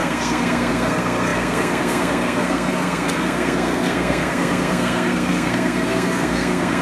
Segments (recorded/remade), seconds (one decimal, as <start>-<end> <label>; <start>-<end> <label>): 0.0-6.8 remade